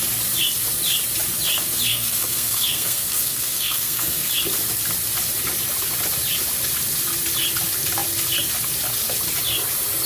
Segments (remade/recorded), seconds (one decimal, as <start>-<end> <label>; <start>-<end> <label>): 0.0-1.9 recorded; 1.9-4.3 remade; 4.3-10.1 recorded